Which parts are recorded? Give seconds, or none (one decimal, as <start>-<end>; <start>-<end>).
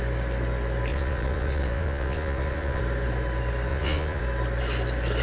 0.0-0.9; 2.8-3.7; 4.2-5.2